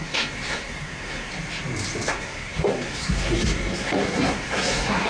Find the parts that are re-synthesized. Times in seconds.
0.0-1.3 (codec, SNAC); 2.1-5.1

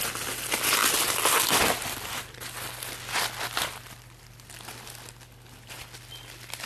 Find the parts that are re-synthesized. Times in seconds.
none